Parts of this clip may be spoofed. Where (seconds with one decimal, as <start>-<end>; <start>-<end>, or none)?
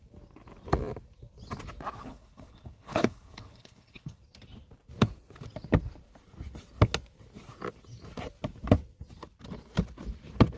2.0-4.2